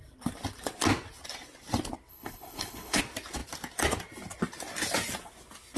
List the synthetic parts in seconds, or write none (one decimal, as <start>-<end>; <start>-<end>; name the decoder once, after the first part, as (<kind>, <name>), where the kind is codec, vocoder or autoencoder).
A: 2.1-3.0 (codec, HILCodec)